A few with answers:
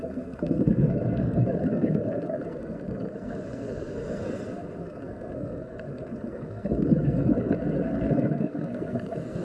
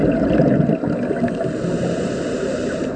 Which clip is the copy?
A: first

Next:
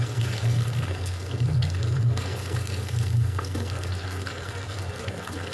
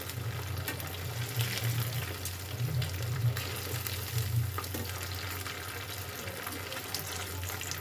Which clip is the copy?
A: first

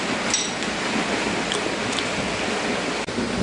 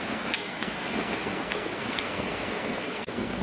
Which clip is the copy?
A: second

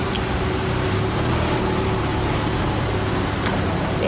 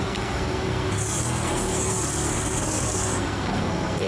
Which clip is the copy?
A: second